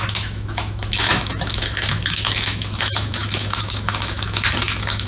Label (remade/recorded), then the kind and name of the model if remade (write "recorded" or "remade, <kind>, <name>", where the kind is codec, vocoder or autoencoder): remade, autoencoder, DAC-VAE